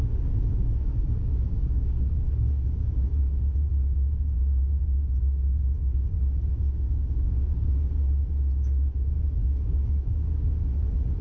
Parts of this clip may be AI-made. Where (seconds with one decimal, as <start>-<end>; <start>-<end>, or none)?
0.0-3.2; 6.5-7.3; 9.4-10.3